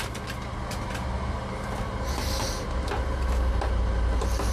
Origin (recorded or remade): recorded